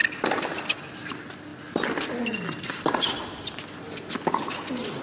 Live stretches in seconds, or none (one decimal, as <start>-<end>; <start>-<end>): 0.0-5.0